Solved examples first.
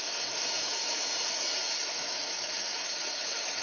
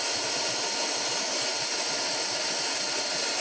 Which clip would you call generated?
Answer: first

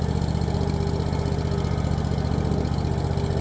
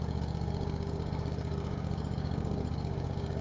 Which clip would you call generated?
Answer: second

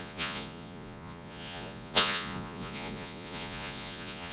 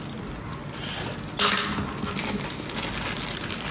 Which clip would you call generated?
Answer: first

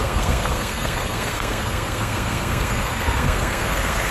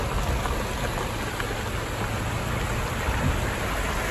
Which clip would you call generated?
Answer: first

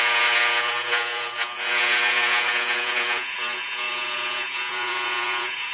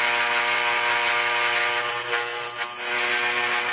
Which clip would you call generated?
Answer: first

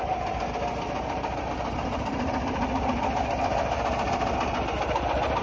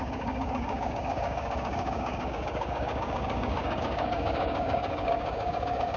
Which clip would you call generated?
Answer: second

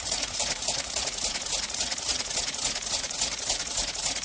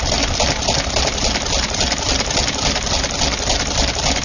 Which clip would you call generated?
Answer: first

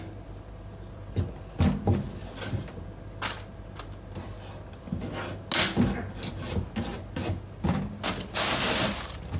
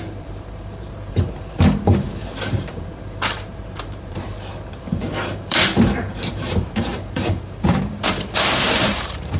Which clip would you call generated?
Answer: second